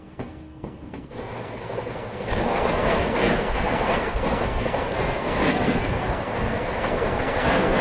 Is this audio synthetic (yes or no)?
yes